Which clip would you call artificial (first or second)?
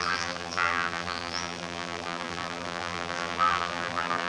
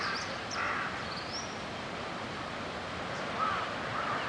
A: first